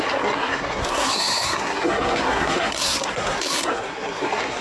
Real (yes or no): no